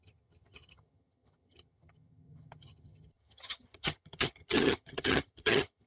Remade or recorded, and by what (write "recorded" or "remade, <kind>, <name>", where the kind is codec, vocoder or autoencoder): remade, vocoder, HiFi-GAN